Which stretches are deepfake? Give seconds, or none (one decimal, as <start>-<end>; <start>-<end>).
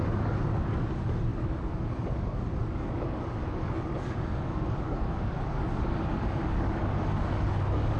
0.0-8.0